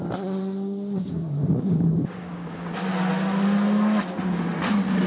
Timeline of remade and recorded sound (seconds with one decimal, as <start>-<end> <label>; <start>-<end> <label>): 0.0-1.0 recorded; 1.0-2.7 remade; 2.7-5.1 recorded